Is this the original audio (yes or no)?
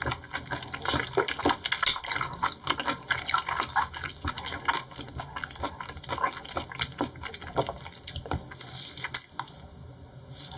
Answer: yes